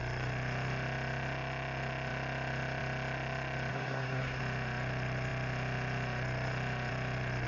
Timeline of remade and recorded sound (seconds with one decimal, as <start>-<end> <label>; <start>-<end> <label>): 0.0-3.7 recorded; 3.7-4.4 remade; 4.4-7.5 recorded